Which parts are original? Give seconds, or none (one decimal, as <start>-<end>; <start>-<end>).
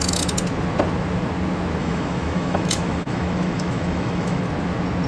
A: 0.0-1.8; 4.4-5.1